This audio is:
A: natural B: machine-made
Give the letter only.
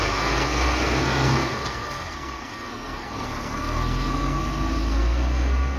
B